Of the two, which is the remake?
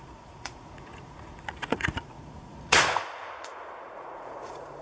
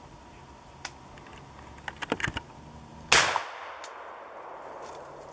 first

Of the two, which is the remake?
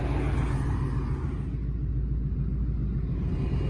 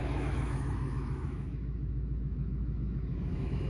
second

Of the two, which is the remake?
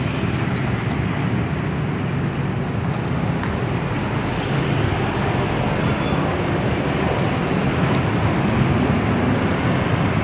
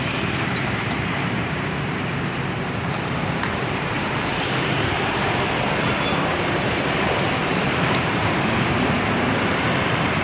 second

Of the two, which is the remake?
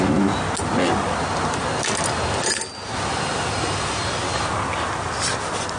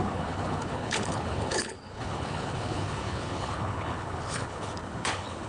second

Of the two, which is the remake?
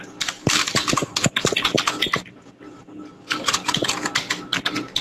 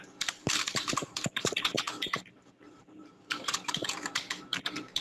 second